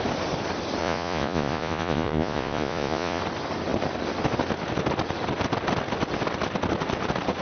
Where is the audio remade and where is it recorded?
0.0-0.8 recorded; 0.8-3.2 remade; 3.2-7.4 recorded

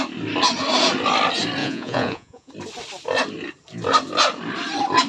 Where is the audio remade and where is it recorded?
0.0-1.6 recorded; 1.6-2.5 remade; 2.5-5.1 recorded

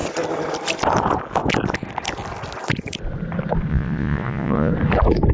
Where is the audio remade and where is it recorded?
0.0-3.7 recorded; 3.7-4.7 remade; 4.7-5.3 recorded

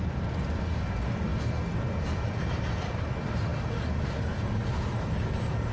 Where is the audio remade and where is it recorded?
0.0-5.7 recorded